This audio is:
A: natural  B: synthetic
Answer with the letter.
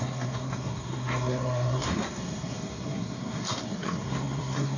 B